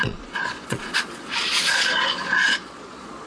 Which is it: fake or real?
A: fake